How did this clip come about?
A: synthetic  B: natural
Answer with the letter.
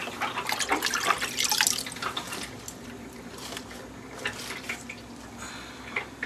B